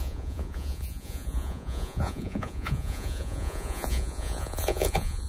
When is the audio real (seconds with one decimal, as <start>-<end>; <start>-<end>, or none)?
none

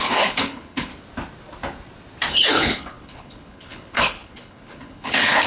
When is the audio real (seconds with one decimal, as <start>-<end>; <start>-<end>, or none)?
0.9-2.3

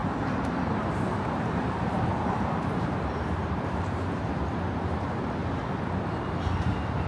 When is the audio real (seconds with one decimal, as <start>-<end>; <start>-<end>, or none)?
4.3-7.1